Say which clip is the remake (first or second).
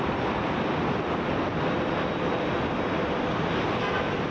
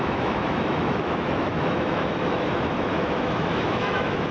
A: second